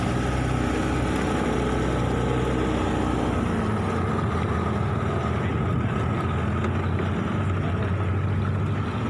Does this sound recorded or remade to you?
recorded